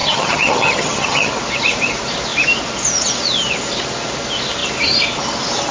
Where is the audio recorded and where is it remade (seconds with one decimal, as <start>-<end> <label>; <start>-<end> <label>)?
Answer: 0.0-1.3 remade; 1.3-5.7 recorded

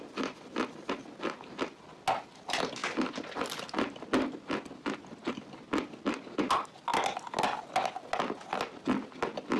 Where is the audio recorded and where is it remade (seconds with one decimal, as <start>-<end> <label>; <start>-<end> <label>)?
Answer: 0.0-9.6 recorded